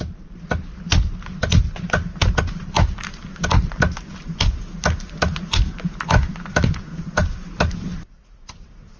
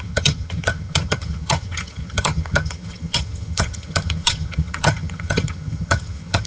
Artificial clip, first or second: second